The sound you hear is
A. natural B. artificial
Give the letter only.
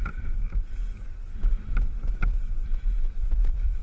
B